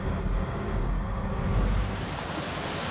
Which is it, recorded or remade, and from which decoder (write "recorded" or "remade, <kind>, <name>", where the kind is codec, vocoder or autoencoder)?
recorded